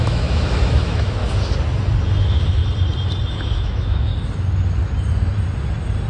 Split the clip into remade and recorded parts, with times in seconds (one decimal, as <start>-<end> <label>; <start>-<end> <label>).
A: 0.0-1.2 remade; 1.2-2.2 recorded; 2.2-2.6 remade; 2.6-3.3 recorded; 3.3-4.1 remade; 4.1-6.1 recorded